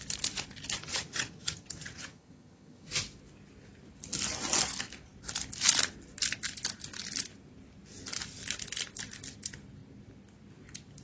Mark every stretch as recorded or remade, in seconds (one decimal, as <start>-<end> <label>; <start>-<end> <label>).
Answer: 0.0-0.8 recorded; 0.8-2.9 remade; 2.9-11.0 recorded